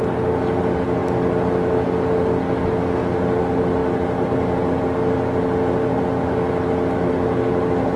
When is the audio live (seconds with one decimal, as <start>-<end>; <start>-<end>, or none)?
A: 0.0-8.0

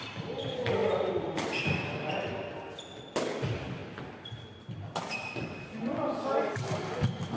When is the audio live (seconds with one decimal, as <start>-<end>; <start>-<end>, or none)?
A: 0.0-7.4

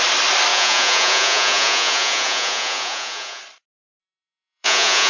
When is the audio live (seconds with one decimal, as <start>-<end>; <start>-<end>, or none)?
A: 0.0-0.5; 3.4-4.0

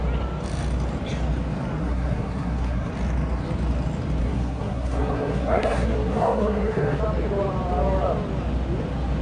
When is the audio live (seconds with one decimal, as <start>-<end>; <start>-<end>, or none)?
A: 0.0-1.8; 2.9-4.2; 7.0-9.2

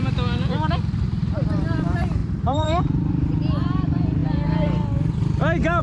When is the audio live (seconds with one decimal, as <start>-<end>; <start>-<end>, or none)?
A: 0.0-2.2; 2.8-5.8

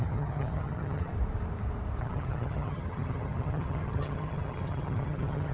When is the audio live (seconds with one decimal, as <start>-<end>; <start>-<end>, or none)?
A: 1.1-2.0

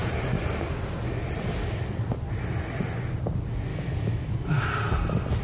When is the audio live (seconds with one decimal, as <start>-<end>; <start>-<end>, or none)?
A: 0.0-3.7; 4.3-5.4